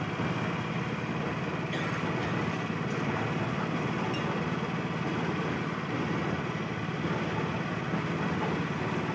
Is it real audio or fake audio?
real